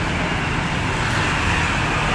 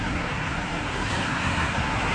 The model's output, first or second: second